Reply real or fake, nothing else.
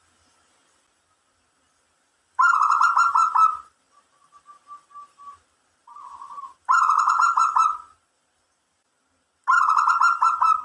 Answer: real